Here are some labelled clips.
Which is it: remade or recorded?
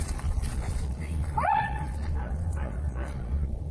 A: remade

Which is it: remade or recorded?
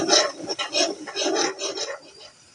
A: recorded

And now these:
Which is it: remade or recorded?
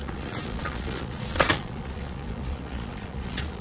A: remade